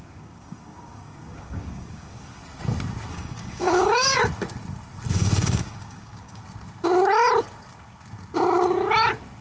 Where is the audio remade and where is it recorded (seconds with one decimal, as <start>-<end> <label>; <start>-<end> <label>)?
0.0-2.4 remade; 2.4-3.1 recorded; 3.1-4.2 remade; 4.2-5.1 recorded; 5.1-6.4 remade; 6.4-9.4 recorded